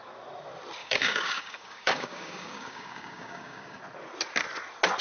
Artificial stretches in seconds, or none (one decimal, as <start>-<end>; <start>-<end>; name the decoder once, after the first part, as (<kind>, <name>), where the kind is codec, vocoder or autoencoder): 0.8-3.8 (codec, DAC)